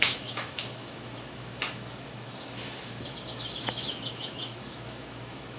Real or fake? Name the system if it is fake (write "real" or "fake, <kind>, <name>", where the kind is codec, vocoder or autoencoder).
fake, autoencoder, DAC-VAE